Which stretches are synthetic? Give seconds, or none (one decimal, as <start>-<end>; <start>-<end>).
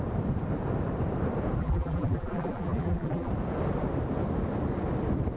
1.6-3.3